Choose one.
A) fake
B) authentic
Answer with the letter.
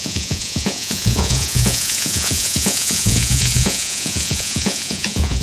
A